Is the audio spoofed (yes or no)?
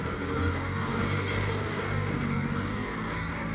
yes